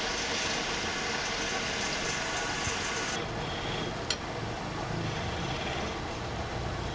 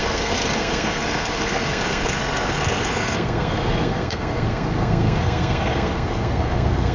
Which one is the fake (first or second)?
second